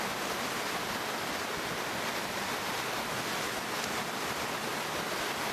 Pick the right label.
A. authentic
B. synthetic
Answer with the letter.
A